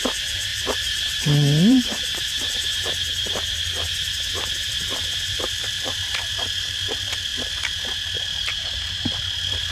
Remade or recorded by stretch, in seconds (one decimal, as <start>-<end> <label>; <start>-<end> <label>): 0.0-9.7 remade